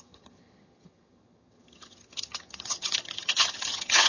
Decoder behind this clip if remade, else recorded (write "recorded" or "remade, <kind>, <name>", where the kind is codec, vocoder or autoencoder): remade, vocoder, HiFi-GAN